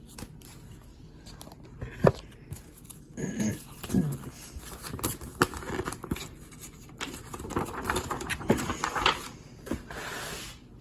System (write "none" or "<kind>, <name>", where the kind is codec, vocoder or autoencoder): none